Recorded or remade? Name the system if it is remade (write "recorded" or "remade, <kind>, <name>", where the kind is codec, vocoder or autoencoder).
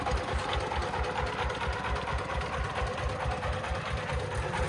recorded